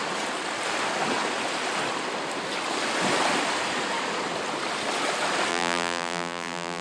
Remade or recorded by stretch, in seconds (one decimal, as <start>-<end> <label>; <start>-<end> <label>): 0.0-5.5 recorded; 5.5-6.8 remade